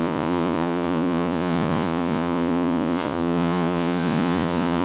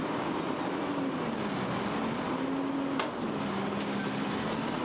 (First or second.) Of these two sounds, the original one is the second